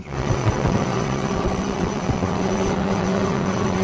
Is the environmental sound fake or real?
fake